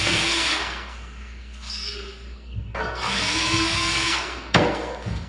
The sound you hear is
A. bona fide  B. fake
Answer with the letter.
B